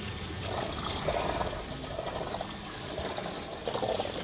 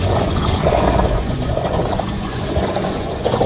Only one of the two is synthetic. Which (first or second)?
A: second